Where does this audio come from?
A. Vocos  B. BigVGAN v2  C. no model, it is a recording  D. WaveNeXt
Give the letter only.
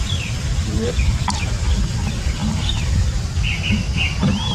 C